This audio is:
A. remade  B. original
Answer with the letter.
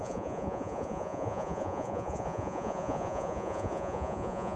A